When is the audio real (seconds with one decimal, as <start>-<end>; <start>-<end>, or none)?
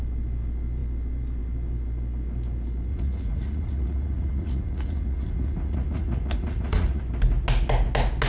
0.0-2.9; 7.0-8.3